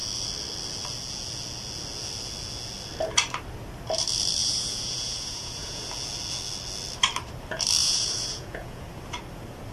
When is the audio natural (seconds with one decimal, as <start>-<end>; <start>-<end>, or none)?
0.0-4.4; 5.9-7.8; 9.0-9.7